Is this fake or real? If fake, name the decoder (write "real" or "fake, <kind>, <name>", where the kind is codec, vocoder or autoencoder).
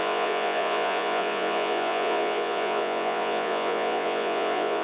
fake, vocoder, Vocos